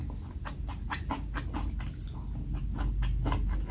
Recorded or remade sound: recorded